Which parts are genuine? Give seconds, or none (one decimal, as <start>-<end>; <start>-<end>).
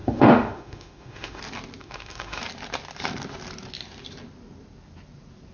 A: 1.4-1.8; 2.4-5.5